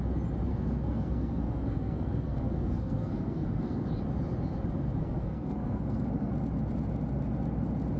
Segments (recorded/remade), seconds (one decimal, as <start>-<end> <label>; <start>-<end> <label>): 0.0-0.5 recorded; 0.5-3.9 remade; 3.9-5.0 recorded; 5.0-6.3 remade; 6.3-8.0 recorded